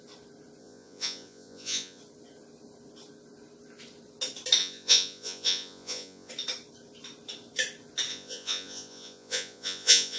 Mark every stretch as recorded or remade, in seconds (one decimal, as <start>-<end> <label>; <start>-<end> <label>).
0.0-0.6 recorded; 0.6-2.0 remade; 2.0-4.6 recorded; 4.6-6.3 remade; 6.3-8.1 recorded; 8.1-10.2 remade